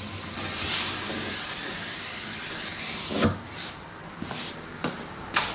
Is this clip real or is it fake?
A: real